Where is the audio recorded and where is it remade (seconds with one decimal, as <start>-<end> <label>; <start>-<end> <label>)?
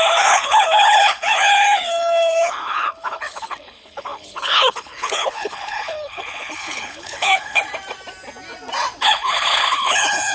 0.0-7.6 remade; 7.6-9.0 recorded; 9.0-10.3 remade